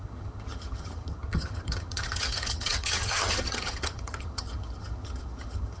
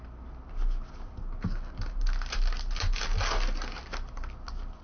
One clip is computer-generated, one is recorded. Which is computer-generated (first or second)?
first